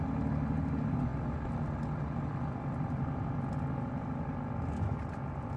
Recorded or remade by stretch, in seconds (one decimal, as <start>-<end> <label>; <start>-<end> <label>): 0.0-5.6 recorded